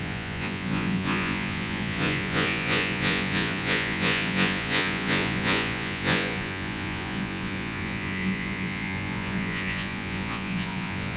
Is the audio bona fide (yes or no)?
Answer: no